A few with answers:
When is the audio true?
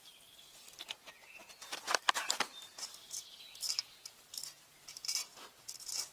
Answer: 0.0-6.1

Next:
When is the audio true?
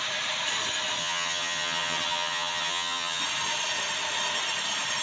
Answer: 0.0-1.0; 3.2-5.0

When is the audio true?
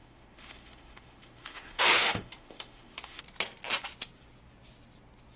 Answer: 3.2-5.4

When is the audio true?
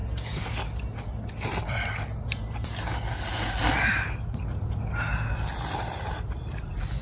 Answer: 0.0-7.0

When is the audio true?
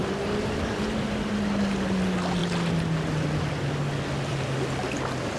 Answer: 0.0-5.4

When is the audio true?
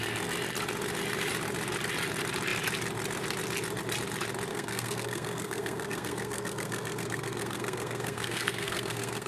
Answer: 0.0-4.5